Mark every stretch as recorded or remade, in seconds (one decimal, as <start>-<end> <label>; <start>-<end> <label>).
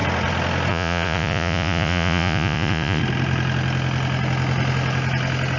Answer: 0.0-0.7 recorded; 0.7-3.0 remade; 3.0-5.6 recorded